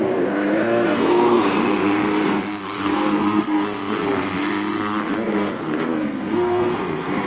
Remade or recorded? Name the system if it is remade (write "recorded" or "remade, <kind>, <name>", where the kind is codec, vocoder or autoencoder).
remade, codec, SNAC